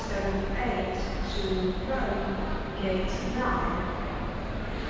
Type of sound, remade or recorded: recorded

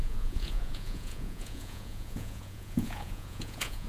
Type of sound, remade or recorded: remade